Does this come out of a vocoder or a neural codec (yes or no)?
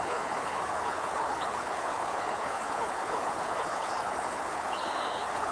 yes